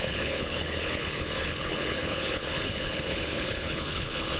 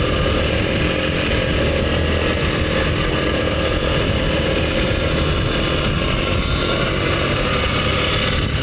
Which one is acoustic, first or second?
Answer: second